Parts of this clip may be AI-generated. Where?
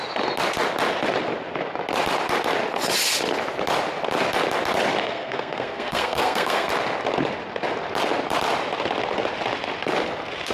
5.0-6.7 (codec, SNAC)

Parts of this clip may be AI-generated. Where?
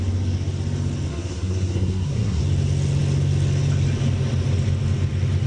1.1-2.4 (codec, SNAC)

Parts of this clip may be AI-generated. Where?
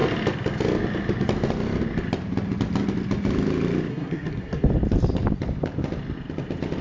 3.9-4.7 (codec, SNAC)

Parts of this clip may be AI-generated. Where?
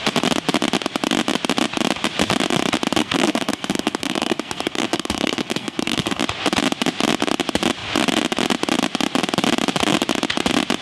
3.0-6.2 (codec, SNAC)